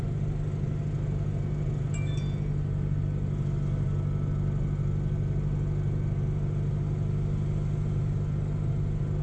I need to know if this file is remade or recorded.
recorded